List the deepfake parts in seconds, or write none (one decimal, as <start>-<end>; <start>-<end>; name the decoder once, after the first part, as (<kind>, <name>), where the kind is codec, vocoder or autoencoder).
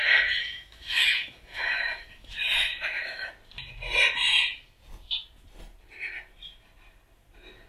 0.4-3.3 (autoencoder, DAC-VAE)